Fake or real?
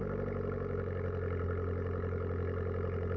real